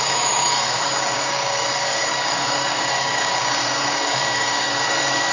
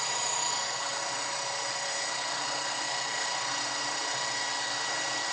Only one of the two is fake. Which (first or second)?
first